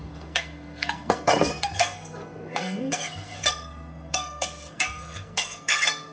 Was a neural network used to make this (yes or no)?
yes